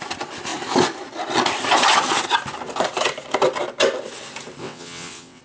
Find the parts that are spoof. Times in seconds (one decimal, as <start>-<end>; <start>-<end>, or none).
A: 4.6-5.4